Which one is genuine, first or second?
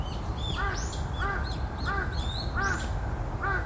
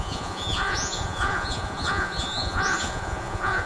first